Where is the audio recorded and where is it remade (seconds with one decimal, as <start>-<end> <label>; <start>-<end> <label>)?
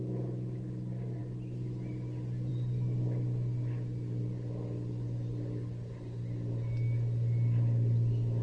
0.0-8.4 recorded